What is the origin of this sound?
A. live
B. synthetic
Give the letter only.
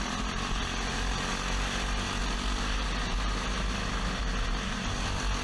A